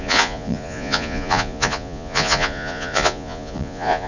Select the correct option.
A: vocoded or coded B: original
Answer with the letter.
A